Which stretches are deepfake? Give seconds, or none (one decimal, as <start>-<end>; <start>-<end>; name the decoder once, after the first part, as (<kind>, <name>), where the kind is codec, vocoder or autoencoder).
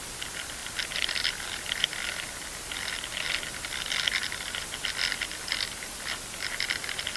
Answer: none